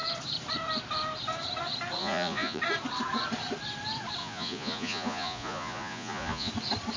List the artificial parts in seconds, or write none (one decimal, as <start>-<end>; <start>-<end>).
2.0-2.6; 4.2-6.5